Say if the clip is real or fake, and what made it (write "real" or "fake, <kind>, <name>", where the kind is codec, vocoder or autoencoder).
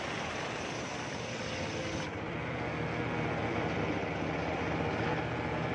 fake, vocoder, BigVGAN v2